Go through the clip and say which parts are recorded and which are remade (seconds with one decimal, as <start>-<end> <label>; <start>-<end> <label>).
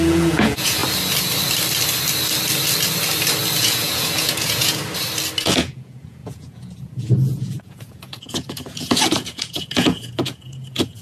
0.0-0.8 remade; 0.8-3.6 recorded; 3.6-4.8 remade; 4.8-5.4 recorded; 5.4-11.0 remade